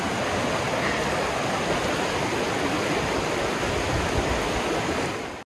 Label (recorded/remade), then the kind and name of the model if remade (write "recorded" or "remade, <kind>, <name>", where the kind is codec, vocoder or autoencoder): recorded